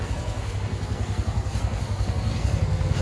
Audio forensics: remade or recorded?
remade